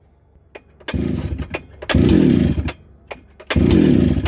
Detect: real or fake real